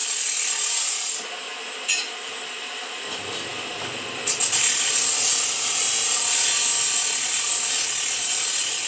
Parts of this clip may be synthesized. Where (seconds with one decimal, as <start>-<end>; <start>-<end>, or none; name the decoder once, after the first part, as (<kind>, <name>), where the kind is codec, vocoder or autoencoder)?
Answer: none